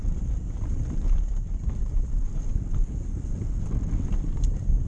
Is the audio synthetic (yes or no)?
yes